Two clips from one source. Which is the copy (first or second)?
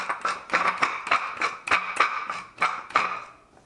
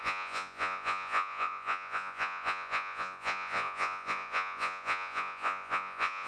second